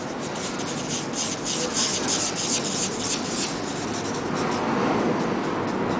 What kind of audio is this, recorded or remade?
recorded